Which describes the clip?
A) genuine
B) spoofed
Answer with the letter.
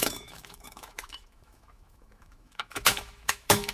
B